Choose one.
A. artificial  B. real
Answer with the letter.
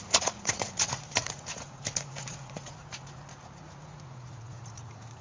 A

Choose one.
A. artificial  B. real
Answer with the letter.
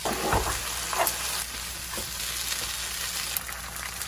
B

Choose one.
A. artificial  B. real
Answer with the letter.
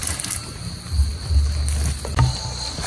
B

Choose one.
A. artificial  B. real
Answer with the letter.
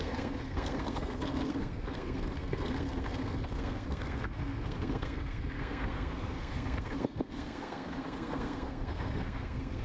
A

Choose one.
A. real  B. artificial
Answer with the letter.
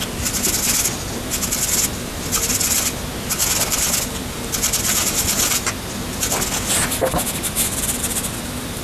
A